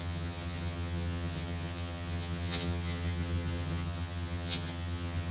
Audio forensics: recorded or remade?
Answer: remade